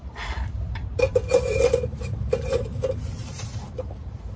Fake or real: fake